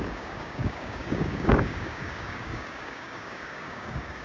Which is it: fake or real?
fake